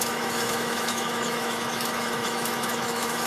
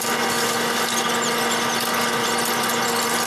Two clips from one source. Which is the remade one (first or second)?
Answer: first